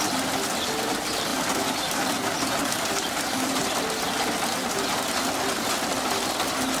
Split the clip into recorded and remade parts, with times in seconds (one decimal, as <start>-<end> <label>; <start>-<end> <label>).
0.0-6.8 recorded